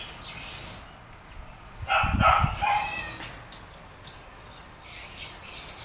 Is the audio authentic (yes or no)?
yes